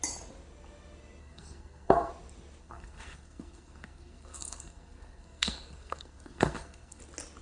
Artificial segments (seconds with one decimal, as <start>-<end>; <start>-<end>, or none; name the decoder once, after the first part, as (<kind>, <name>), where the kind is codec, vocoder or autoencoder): 1.2-2.1 (codec, SNAC); 2.6-7.0